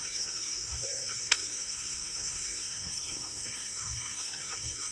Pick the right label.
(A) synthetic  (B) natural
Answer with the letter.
A